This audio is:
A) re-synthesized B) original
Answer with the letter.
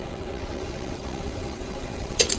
A